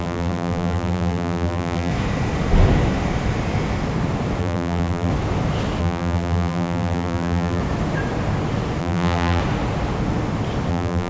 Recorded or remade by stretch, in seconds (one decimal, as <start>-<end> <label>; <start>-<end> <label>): 0.0-1.9 remade; 1.9-4.4 recorded; 4.4-5.1 remade; 5.1-5.8 recorded; 5.8-7.6 remade; 7.6-8.8 recorded; 8.8-9.4 remade; 9.4-10.7 recorded; 10.7-11.1 remade